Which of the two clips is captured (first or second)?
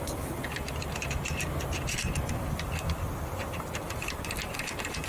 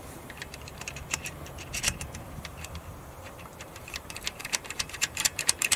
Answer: first